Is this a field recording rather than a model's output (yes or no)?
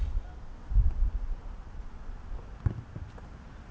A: yes